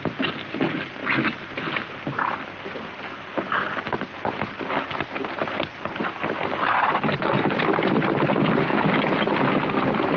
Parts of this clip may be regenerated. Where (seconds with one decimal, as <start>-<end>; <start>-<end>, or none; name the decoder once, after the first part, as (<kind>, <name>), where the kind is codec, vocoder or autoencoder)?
none